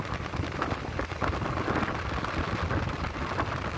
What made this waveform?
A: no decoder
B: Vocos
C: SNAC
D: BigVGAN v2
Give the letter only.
A